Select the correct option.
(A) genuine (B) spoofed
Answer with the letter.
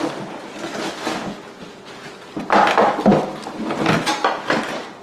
A